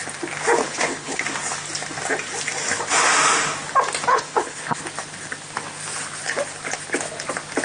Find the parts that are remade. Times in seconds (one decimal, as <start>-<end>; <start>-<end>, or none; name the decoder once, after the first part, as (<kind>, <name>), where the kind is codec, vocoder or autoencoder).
0.6-1.2 (codec, HILCodec); 4.1-4.8